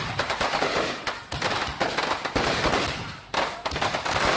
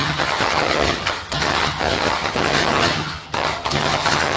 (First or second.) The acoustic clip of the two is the first